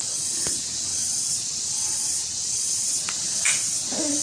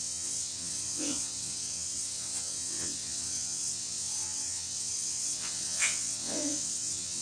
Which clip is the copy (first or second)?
second